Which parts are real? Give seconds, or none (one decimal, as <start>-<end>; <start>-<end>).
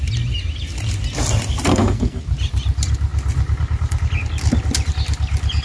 0.0-1.7; 2.2-5.6